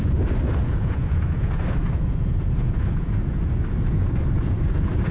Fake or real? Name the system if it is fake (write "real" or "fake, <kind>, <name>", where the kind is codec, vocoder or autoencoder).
fake, vocoder, Vocos